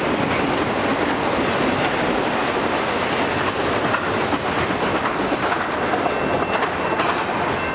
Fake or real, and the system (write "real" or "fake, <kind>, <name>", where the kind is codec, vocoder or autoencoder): real